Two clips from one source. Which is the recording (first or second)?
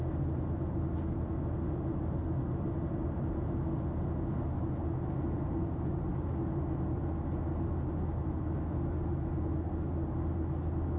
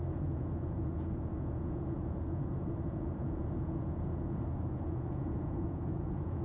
first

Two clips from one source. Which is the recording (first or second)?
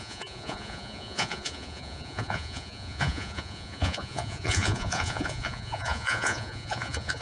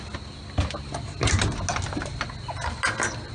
second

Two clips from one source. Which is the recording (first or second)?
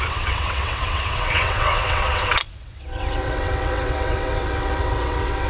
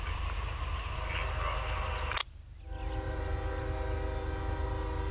second